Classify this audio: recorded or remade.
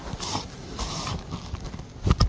recorded